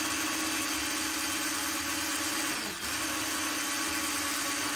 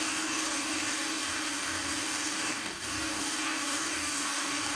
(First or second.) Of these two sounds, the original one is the first